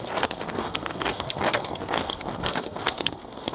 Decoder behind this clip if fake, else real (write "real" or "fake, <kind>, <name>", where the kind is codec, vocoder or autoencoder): fake, codec, SNAC